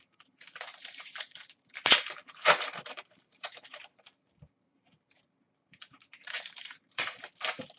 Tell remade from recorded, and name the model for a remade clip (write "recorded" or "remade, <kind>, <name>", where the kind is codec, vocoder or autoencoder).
remade, vocoder, BigVGAN v2